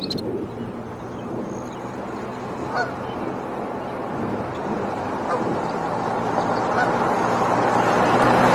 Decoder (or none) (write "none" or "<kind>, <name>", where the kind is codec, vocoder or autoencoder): none